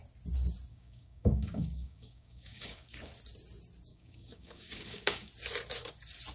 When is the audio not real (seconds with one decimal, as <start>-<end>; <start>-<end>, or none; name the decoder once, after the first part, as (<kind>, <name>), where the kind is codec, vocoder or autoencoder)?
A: 0.7-3.1 (codec, DAC); 3.9-5.3